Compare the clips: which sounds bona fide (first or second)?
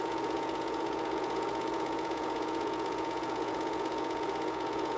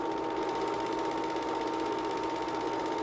second